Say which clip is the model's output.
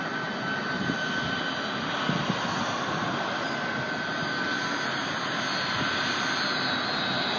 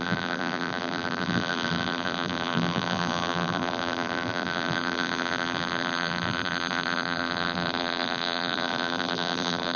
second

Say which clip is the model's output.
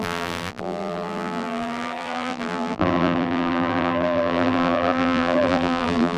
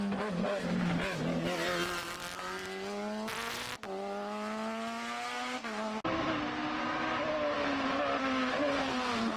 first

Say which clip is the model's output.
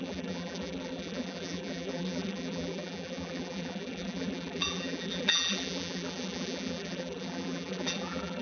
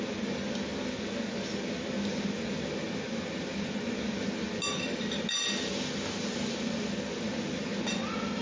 first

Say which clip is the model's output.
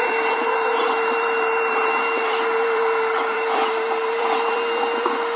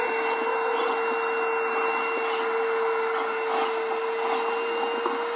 first